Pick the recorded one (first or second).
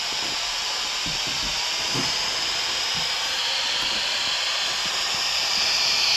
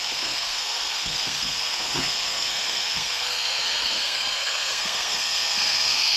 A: first